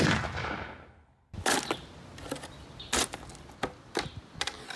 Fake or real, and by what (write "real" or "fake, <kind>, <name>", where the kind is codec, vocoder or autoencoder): real